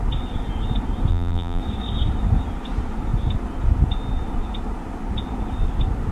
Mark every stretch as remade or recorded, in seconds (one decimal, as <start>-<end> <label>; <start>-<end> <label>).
0.0-1.1 recorded; 1.1-1.6 remade; 1.6-6.1 recorded